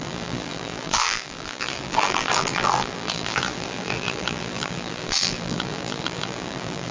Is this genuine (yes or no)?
no